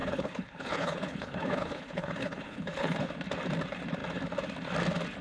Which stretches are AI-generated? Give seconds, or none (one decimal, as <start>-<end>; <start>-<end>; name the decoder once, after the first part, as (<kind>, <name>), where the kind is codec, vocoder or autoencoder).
0.0-3.1 (codec, HILCodec)